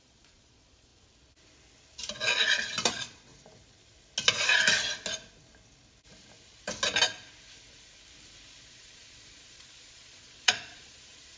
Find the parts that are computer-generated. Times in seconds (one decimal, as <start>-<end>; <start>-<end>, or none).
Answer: 0.0-0.9; 2.9-3.3; 8.6-11.4